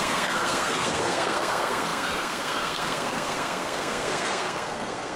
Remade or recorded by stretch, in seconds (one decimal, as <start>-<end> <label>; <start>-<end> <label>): 0.0-5.2 remade